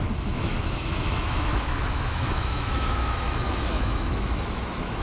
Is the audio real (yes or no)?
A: no